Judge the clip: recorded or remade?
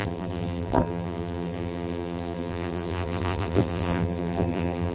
remade